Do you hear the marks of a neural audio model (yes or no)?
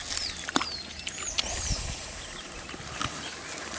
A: no